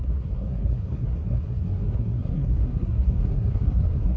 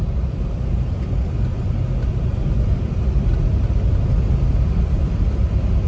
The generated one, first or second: first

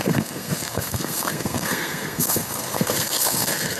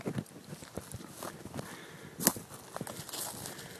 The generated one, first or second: first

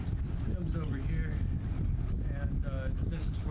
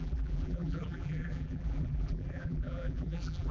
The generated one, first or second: second